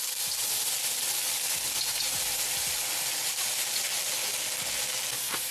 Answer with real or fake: real